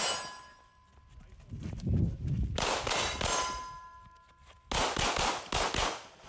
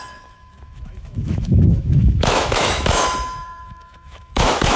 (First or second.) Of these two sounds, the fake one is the second